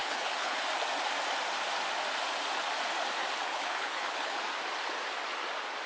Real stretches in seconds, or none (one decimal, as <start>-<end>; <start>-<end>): 0.6-3.5; 4.4-5.9